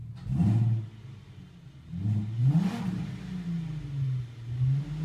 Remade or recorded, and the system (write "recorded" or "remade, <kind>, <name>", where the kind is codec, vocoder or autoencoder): recorded